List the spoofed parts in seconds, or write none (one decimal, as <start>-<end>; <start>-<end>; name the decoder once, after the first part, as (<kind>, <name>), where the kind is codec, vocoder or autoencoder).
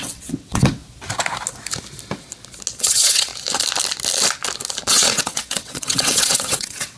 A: 0.0-0.8 (vocoder, WaveNeXt); 2.8-3.3; 4.9-7.0